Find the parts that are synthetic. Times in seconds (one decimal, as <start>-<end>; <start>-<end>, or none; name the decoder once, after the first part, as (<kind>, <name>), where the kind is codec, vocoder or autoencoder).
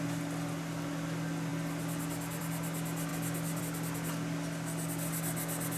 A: none